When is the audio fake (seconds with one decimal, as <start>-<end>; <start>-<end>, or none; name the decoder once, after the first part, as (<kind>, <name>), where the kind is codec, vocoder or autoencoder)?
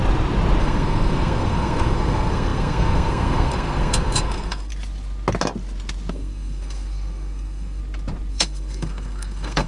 0.6-4.7 (codec, SNAC); 6.1-7.8; 8.3-9.7